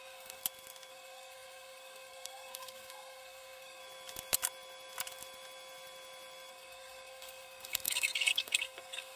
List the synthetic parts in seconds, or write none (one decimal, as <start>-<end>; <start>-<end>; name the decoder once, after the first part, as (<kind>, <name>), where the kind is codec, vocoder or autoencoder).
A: 0.0-0.4 (codec, SNAC); 0.9-3.8; 6.5-9.2